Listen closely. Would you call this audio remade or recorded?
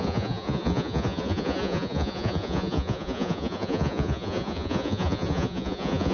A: remade